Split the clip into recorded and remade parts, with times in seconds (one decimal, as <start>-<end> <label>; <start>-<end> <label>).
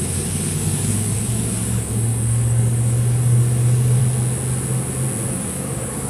0.0-4.0 remade; 4.0-5.3 recorded; 5.3-6.1 remade